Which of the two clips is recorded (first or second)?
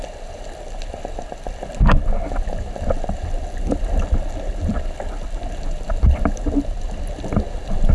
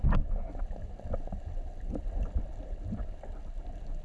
first